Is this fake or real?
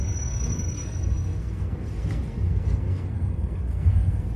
fake